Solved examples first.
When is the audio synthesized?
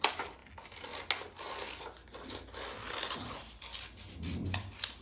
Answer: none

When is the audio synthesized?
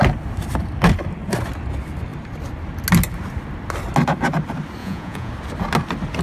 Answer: 4.8-5.3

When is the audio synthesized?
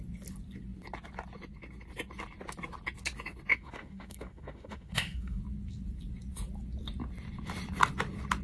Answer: 3.5-5.4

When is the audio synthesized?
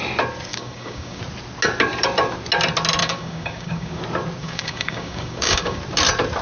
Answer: 0.5-1.2; 3.0-4.0; 4.4-5.8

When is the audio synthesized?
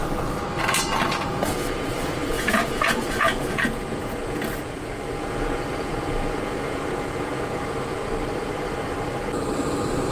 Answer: 1.1-8.0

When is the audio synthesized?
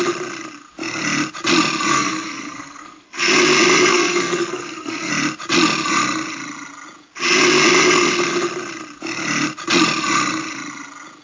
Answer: 1.9-3.3; 3.9-5.1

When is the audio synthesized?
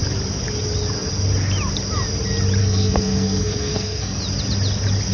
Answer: 2.6-4.2